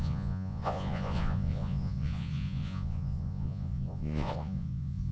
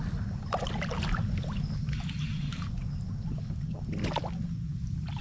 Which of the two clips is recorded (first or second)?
second